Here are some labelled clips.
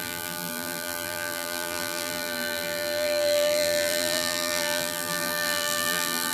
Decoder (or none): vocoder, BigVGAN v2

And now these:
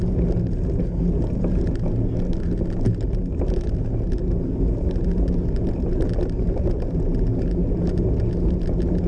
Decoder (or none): none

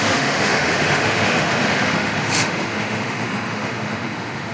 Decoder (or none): autoencoder, DAC-VAE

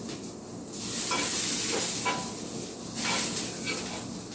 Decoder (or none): none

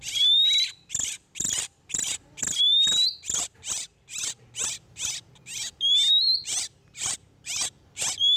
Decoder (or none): none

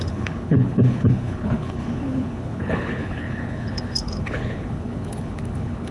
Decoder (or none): codec, HILCodec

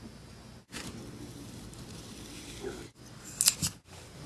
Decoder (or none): none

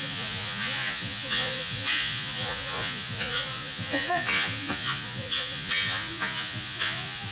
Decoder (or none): vocoder, Vocos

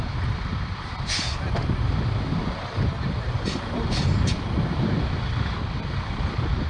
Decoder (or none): none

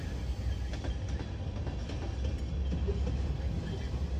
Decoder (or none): none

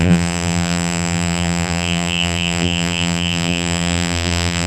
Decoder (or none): vocoder, BigVGAN v2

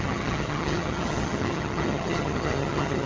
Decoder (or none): vocoder, HiFi-GAN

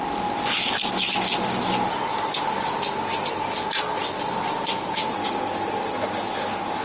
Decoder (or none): none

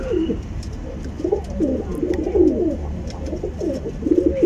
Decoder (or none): none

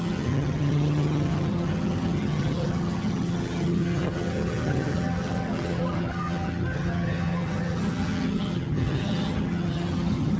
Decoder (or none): vocoder, HiFi-GAN